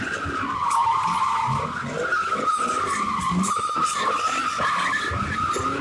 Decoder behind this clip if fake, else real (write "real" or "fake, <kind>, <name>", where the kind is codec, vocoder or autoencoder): real